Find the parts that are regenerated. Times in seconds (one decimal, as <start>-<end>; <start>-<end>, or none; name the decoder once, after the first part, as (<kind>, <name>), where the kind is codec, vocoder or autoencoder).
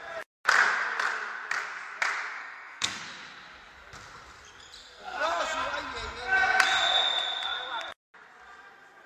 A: 2.4-3.0 (codec, SNAC); 4.8-5.4